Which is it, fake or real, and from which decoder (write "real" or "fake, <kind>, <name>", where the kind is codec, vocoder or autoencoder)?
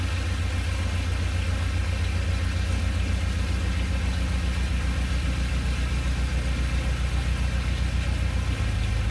real